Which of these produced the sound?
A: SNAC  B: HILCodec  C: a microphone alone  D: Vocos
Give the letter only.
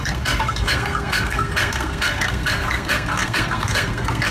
A